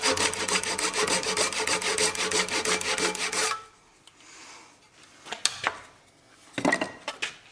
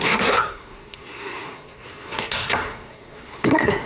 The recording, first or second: first